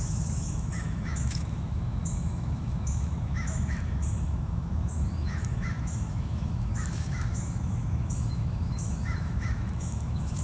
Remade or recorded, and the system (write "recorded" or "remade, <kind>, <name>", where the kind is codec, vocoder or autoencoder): remade, autoencoder, DAC-VAE